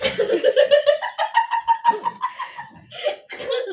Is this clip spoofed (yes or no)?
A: no